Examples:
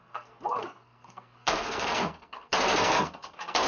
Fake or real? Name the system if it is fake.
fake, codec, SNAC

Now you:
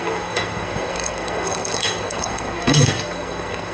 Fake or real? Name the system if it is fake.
fake, codec, SNAC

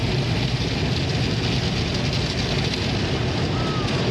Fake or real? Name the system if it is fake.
real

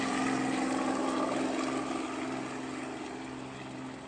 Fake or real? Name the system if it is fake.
real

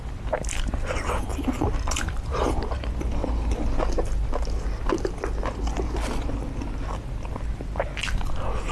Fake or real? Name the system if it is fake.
real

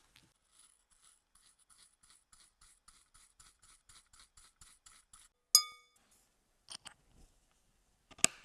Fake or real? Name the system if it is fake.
real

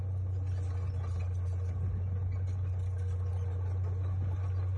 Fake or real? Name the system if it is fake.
real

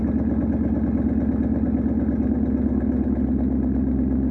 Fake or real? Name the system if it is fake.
real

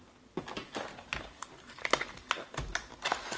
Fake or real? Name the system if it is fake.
real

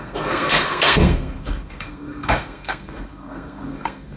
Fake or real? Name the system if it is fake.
fake, codec, SNAC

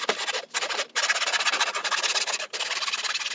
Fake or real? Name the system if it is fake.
real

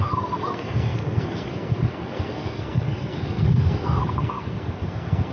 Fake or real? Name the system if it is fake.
fake, codec, SNAC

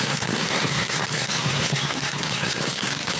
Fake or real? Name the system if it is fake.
fake, codec, SNAC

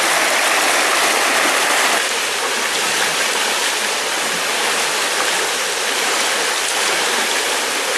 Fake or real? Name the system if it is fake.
real